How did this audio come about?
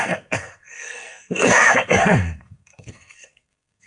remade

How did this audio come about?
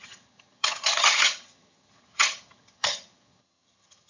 remade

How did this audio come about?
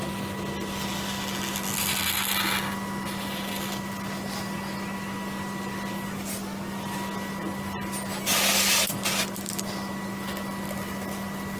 recorded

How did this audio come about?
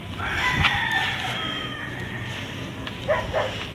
recorded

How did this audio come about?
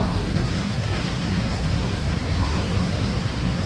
remade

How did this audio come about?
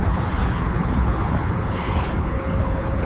remade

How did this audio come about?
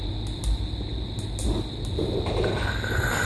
recorded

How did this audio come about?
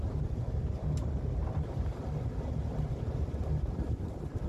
recorded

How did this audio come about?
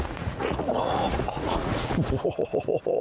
remade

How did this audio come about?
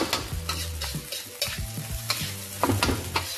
recorded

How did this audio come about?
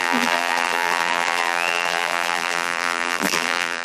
remade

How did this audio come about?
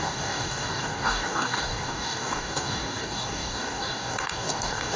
remade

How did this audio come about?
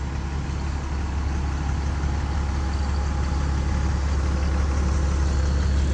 recorded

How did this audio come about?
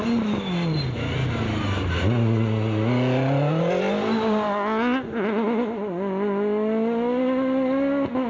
recorded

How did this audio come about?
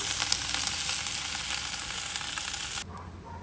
recorded